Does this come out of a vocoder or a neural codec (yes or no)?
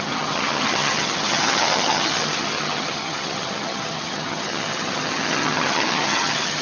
yes